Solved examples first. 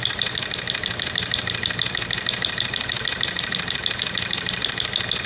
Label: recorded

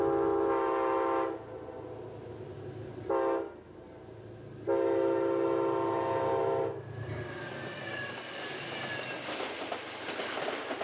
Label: recorded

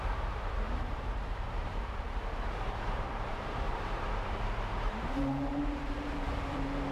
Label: remade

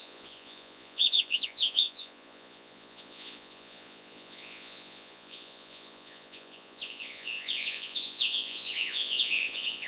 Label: remade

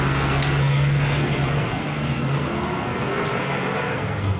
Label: remade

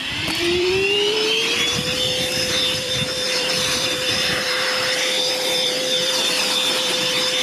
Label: remade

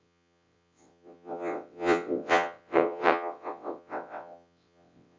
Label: remade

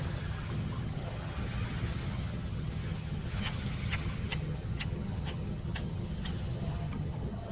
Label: remade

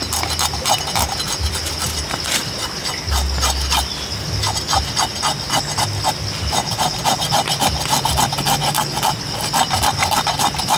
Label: recorded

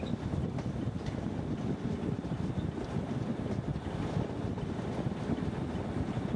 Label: recorded